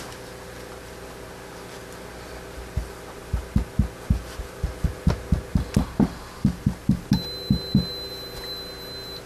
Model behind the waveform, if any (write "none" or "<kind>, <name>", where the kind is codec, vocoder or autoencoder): none